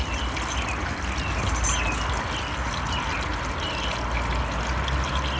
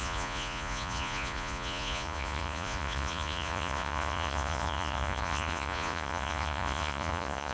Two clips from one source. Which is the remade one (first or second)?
second